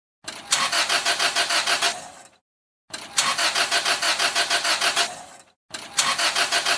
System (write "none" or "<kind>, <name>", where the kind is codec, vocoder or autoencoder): none